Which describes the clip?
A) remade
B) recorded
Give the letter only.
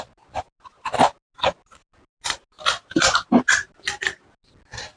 B